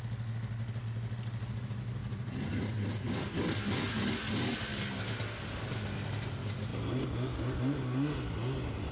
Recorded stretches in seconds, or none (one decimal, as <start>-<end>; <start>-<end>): 0.0-2.0; 3.9-8.9